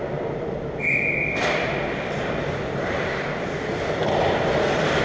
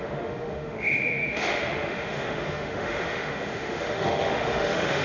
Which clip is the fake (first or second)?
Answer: second